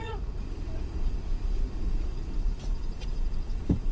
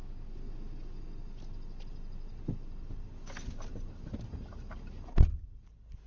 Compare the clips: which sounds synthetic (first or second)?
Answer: first